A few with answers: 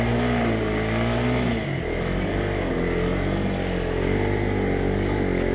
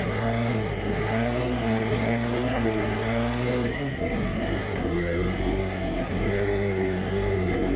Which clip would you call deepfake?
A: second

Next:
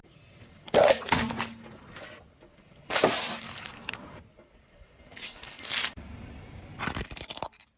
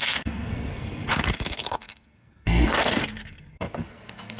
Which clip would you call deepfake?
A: second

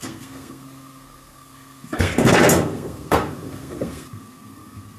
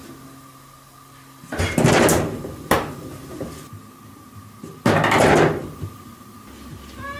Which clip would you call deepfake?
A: first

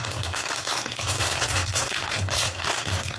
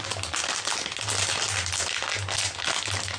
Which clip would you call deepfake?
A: first